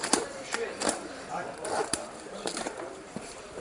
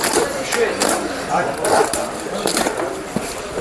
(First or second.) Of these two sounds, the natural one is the second